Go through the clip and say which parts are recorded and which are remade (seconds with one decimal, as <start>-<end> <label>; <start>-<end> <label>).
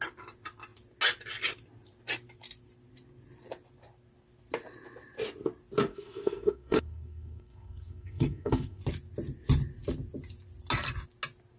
0.0-5.9 recorded; 5.9-8.8 remade; 8.8-11.6 recorded